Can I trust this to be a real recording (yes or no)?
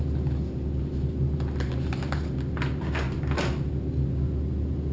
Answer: yes